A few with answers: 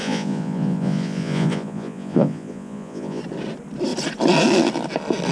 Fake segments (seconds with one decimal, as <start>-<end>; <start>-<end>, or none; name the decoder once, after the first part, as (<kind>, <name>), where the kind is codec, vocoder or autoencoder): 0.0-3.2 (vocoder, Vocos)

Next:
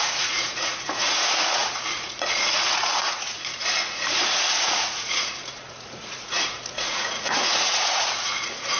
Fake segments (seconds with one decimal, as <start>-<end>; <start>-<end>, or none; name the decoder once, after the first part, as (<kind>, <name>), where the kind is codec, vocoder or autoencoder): 0.0-8.8 (vocoder, Vocos)

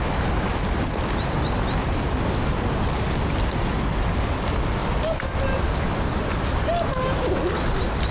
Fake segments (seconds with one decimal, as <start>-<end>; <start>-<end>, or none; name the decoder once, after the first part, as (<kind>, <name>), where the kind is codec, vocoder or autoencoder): none

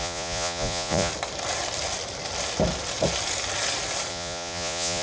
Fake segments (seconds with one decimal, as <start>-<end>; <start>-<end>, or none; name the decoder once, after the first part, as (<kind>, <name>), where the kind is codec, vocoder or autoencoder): 0.0-1.1 (vocoder, Vocos); 4.1-5.0

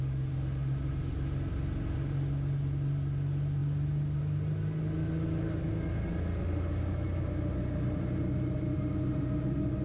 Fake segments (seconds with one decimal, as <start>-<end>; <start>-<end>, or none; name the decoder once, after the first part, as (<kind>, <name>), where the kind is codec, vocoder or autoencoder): none

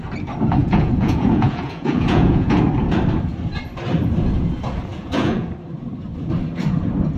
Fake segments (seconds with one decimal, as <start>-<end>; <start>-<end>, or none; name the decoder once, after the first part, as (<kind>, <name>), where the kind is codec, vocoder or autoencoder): 0.6-2.6 (vocoder, Vocos); 4.9-5.5

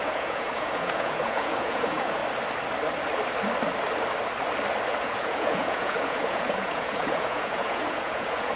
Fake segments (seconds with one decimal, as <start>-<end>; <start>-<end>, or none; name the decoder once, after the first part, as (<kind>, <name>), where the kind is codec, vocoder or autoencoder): 0.0-2.2 (vocoder, Vocos); 4.9-8.6